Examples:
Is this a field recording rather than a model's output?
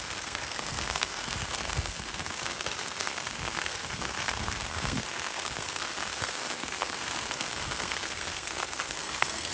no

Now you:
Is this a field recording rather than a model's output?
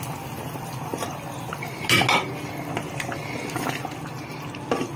yes